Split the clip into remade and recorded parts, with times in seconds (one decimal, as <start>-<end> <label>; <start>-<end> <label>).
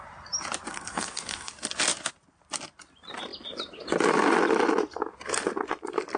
0.0-0.7 recorded; 0.7-1.5 remade; 1.5-6.2 recorded